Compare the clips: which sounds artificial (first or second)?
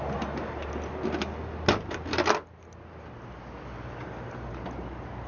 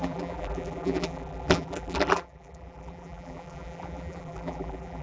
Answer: second